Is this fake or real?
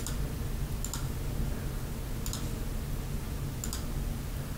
real